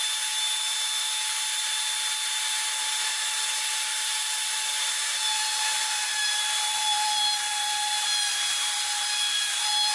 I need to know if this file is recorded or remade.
remade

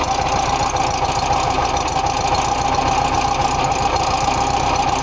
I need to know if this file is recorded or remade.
recorded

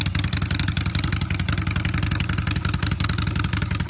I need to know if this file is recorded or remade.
recorded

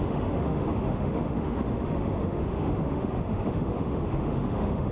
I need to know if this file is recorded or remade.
remade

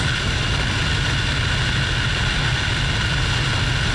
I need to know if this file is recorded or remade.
recorded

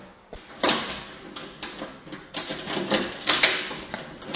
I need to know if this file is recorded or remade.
recorded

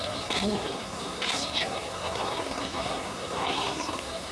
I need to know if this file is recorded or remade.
remade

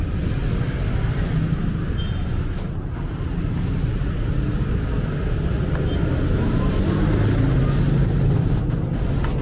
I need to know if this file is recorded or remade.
recorded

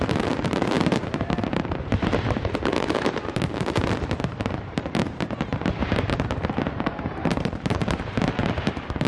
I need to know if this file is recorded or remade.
remade